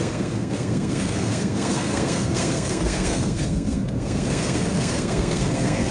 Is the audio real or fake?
fake